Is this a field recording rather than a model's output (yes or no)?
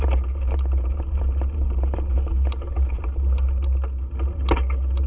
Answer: yes